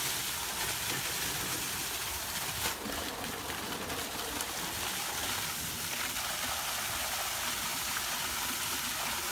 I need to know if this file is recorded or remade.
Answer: recorded